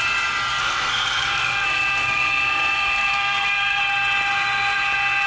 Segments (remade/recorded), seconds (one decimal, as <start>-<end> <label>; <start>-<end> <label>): 0.0-0.6 recorded; 0.6-3.8 remade; 3.8-5.3 recorded